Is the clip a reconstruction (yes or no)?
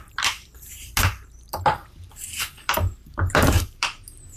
yes